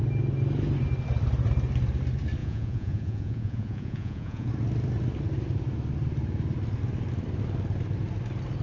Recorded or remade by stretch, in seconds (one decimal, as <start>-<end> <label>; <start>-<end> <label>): 0.0-2.4 recorded; 2.4-4.5 remade; 4.5-8.6 recorded